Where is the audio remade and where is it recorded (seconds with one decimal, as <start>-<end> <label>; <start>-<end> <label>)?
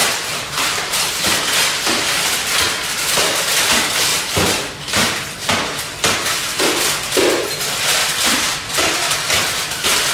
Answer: 0.0-0.6 remade; 0.6-10.1 recorded